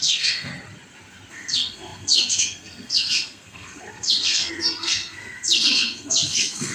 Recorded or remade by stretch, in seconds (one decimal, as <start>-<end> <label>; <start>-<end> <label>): 0.0-0.5 remade; 0.5-1.3 recorded; 1.3-6.7 remade